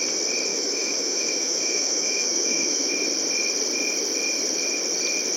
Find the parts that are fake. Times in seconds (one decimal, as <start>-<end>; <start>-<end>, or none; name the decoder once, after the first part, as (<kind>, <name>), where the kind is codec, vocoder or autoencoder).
0.5-2.9 (autoencoder, DAC-VAE)